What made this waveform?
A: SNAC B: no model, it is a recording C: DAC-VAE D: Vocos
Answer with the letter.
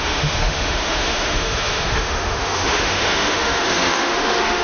C